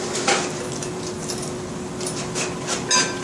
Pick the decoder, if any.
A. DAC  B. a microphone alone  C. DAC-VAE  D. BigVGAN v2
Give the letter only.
B